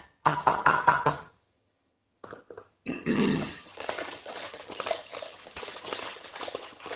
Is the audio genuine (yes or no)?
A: no